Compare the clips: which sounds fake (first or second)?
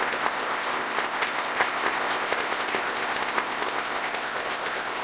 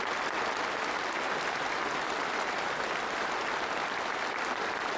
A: first